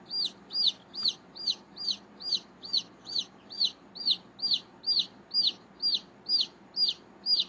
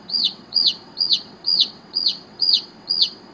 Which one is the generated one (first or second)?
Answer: second